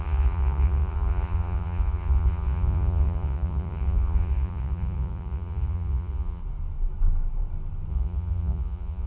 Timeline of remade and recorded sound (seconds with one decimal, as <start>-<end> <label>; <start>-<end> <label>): 0.0-6.4 remade; 6.4-7.9 recorded; 7.9-9.1 remade